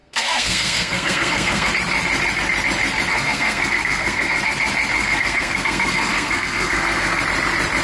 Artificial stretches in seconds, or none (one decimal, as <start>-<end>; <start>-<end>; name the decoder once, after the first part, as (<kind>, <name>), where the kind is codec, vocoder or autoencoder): 0.0-1.7 (codec, SNAC); 3.1-4.4; 5.0-7.2